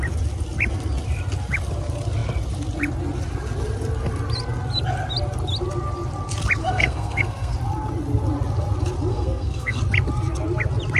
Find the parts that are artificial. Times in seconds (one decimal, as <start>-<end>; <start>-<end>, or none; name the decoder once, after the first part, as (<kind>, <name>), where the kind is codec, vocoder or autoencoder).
6.6-7.5 (codec, SNAC); 9.1-9.8